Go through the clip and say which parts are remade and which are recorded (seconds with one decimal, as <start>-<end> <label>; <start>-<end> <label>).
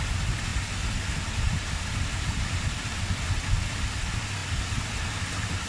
0.0-5.7 recorded